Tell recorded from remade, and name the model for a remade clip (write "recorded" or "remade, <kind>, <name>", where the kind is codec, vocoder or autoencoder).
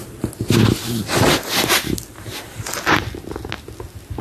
recorded